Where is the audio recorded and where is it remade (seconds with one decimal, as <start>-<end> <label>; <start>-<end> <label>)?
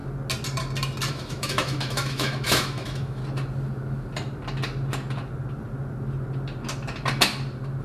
0.0-1.1 recorded; 1.1-3.2 remade; 3.2-7.8 recorded